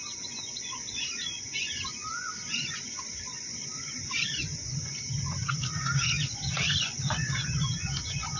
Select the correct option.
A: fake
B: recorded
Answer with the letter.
A